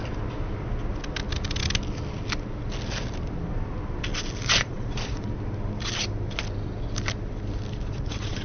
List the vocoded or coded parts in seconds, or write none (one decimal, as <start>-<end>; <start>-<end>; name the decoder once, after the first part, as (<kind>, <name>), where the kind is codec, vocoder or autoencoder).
4.6-5.3 (vocoder, Vocos); 7.9-8.4